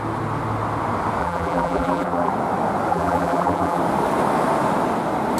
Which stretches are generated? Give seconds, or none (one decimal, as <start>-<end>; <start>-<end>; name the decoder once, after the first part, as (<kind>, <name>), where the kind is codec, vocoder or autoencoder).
1.2-2.3 (vocoder, BigVGAN v2); 2.9-3.8